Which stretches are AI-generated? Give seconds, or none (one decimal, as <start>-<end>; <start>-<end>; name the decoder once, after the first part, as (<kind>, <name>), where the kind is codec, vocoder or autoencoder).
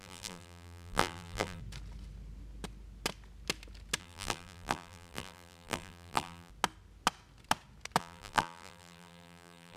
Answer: 0.0-1.6 (vocoder, BigVGAN v2); 4.0-6.5; 8.0-9.8